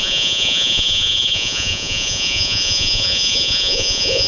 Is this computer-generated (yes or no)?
yes